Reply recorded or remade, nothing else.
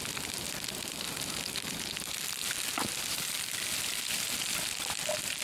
recorded